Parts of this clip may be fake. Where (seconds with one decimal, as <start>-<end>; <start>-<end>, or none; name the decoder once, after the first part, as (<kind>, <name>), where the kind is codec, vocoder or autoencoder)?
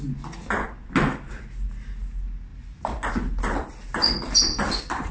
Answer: none